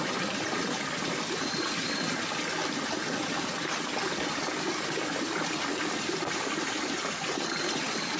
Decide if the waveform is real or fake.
real